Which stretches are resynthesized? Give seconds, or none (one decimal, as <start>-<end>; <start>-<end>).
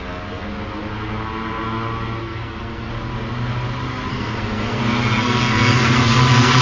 2.2-2.9; 4.1-4.8; 5.2-6.6